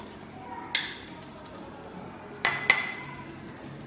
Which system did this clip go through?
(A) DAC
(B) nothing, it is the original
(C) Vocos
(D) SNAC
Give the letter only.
B